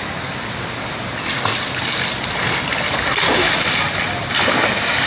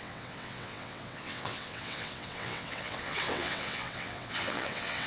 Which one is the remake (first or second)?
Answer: second